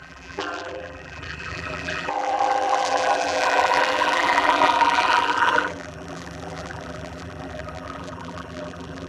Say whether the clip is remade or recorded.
remade